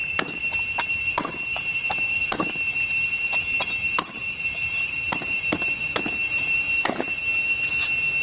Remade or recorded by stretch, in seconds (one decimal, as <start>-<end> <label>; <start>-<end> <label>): 0.0-0.9 recorded; 0.9-5.8 remade; 5.8-6.2 recorded; 6.2-7.2 remade; 7.2-8.2 recorded